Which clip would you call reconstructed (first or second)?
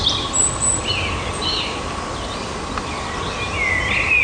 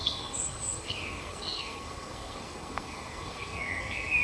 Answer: second